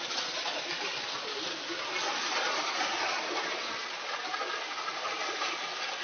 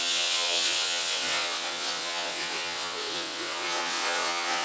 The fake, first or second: second